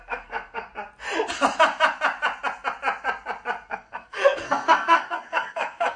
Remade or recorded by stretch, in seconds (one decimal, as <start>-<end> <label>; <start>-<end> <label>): 0.0-0.7 remade; 0.7-3.7 recorded; 3.7-6.0 remade